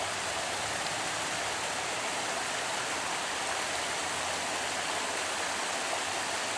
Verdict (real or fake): real